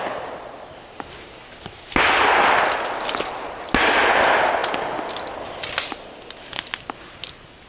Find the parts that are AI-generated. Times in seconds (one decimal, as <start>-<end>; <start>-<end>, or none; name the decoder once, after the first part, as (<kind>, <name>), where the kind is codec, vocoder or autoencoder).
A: none